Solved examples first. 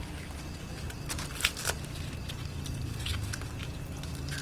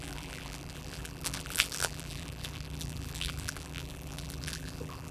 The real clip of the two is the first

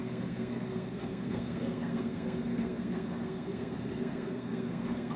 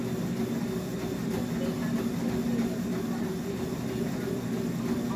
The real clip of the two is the second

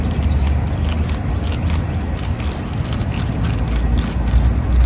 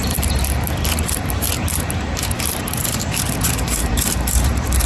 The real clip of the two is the first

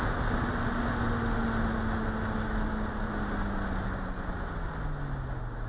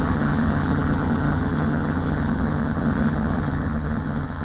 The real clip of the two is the first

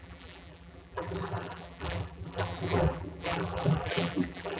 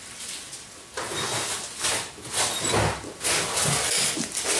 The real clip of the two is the second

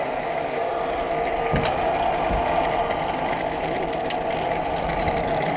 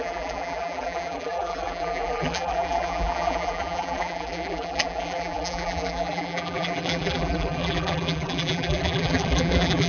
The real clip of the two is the first